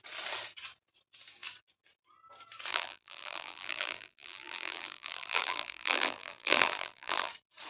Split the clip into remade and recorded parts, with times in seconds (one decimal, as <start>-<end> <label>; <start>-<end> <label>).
0.0-2.7 recorded; 2.7-7.3 remade; 7.3-7.7 recorded